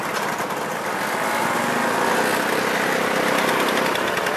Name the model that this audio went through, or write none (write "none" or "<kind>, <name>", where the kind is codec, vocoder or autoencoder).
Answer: none